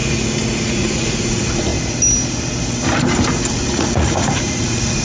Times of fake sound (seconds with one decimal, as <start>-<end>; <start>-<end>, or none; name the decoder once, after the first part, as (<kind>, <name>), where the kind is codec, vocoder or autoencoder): 0.7-1.7 (vocoder, Vocos); 3.5-5.0